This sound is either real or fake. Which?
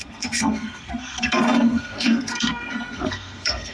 fake